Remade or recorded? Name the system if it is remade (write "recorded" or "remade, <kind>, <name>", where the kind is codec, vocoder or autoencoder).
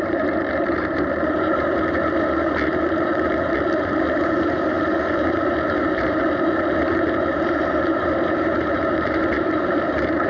remade, vocoder, BigVGAN v2